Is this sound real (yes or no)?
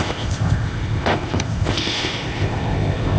no